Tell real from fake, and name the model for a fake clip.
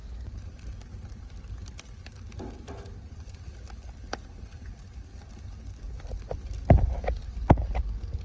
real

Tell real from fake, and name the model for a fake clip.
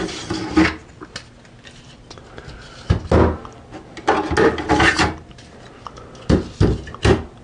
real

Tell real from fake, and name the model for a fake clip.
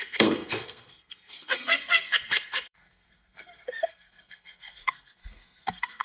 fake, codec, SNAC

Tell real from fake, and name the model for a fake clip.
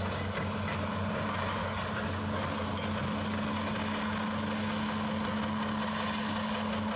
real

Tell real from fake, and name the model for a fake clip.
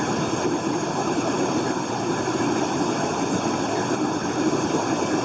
real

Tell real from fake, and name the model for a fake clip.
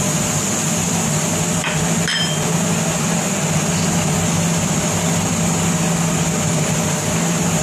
real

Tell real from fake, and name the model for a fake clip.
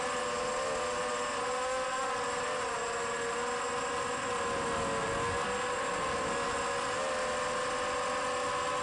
real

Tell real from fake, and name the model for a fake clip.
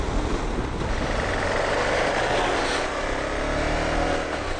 real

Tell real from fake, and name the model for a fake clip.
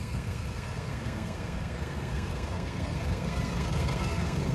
fake, codec, SNAC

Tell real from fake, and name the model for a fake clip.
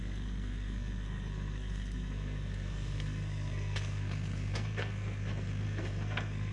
fake, codec, SNAC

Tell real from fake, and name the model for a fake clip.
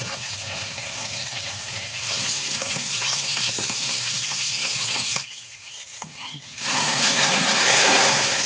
fake, codec, SNAC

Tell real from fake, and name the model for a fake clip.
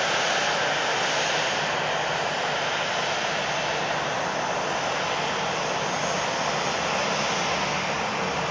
real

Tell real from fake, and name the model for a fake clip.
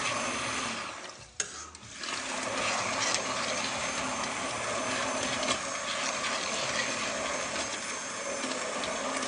real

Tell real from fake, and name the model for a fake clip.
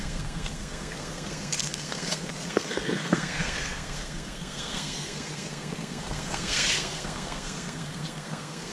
fake, codec, SNAC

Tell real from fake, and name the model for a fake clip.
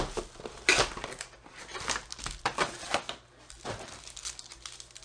real